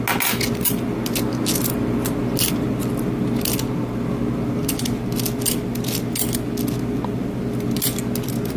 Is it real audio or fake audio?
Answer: real